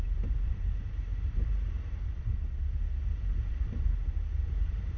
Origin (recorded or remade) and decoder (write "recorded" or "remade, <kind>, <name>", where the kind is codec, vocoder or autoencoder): remade, vocoder, BigVGAN v2